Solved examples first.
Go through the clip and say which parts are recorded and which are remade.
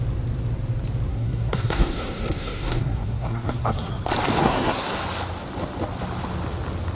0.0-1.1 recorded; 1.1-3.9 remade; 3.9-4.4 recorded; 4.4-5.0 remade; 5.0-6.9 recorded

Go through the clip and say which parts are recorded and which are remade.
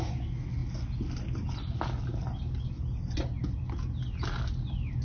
0.0-5.0 recorded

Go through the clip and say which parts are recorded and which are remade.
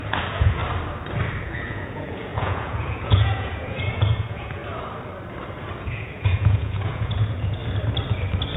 0.0-0.6 remade; 0.6-1.4 recorded; 1.4-4.6 remade; 4.6-5.8 recorded; 5.8-7.6 remade; 7.6-8.6 recorded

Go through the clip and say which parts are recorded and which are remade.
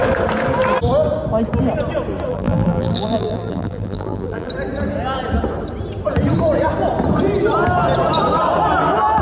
0.0-2.3 recorded; 2.3-4.5 remade; 4.5-9.2 recorded